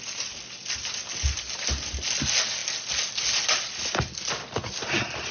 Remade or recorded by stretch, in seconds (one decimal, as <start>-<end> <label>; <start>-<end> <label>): 0.0-5.3 recorded